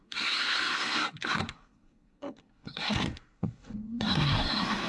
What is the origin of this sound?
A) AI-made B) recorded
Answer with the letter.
A